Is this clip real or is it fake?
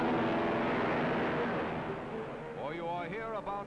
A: real